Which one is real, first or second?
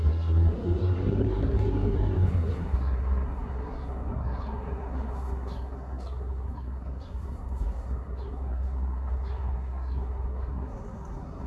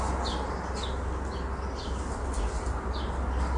second